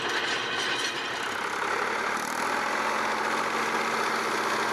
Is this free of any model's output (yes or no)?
yes